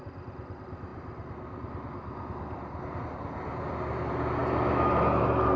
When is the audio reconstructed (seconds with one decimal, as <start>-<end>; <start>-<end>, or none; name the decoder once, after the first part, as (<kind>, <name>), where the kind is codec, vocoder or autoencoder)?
none